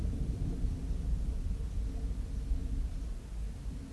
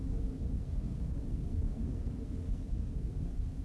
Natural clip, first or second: first